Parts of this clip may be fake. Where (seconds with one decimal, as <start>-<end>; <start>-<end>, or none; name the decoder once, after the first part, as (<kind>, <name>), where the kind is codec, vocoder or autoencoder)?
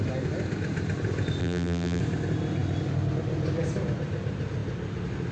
1.4-2.0 (vocoder, BigVGAN v2)